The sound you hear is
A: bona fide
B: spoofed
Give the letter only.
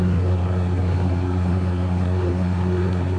B